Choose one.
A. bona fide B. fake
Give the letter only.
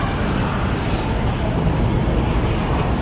A